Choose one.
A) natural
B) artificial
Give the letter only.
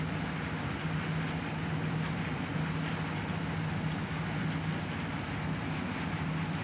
A